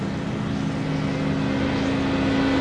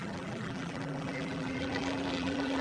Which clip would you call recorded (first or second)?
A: first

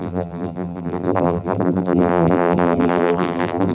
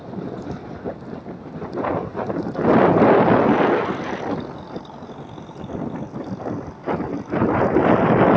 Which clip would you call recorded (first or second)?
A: second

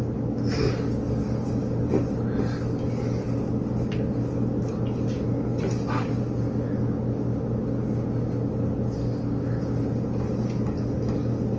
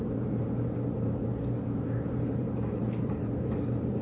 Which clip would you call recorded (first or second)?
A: first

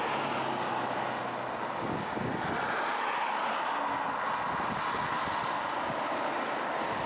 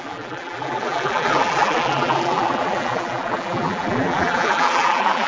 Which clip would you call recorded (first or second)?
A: first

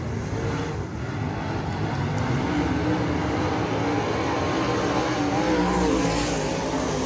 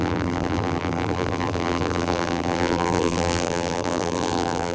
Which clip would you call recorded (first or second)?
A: first